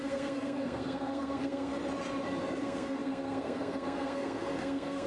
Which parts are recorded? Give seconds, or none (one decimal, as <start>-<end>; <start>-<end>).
1.7-2.6